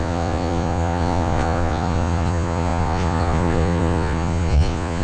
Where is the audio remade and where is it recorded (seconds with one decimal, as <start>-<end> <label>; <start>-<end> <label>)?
0.0-5.0 remade